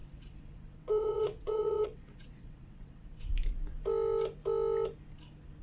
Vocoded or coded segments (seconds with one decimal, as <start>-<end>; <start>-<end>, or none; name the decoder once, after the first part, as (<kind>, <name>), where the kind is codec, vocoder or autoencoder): 0.0-3.3 (vocoder, WaveNeXt)